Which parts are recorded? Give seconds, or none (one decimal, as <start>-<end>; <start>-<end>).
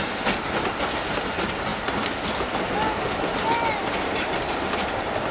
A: 0.0-5.3